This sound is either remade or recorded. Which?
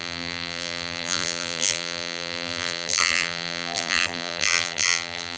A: remade